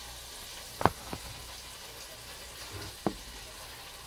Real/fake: real